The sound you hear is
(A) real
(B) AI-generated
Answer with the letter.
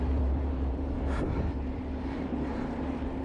B